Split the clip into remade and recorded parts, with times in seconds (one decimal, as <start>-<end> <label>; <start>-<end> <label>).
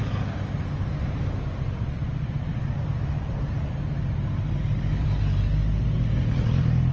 0.0-6.9 recorded